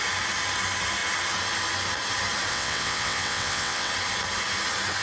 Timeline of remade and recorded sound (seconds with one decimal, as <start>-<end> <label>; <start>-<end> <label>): 0.0-2.5 recorded; 2.5-3.9 remade; 3.9-5.0 recorded